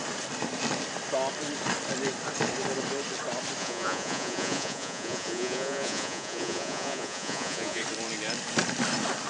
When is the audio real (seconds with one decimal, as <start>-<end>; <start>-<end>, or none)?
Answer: 0.0-3.6; 7.8-9.3